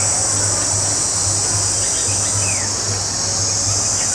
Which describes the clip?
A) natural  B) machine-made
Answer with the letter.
A